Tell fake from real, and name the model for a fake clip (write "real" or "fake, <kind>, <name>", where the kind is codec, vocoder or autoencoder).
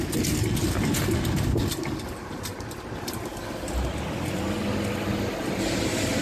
real